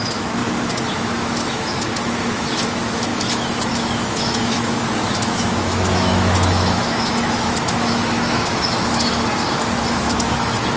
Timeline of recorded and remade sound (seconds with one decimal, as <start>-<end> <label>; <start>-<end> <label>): 0.0-0.4 remade; 0.4-0.9 recorded; 0.9-9.1 remade; 9.1-9.9 recorded; 9.9-10.8 remade